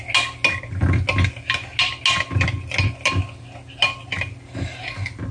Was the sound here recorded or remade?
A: recorded